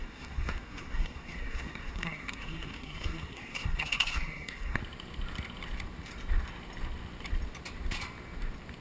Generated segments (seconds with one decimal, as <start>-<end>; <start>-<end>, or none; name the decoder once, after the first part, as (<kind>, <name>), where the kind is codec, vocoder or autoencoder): 0.0-4.8 (codec, SNAC)